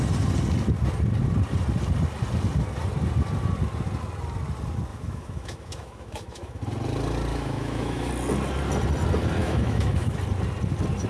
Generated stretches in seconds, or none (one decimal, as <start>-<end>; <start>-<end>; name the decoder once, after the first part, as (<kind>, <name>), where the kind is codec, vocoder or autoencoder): 4.9-6.6 (autoencoder, DAC-VAE); 7.3-8.1; 9.4-10.2